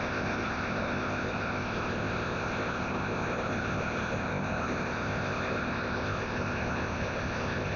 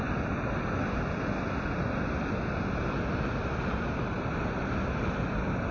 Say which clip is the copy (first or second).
first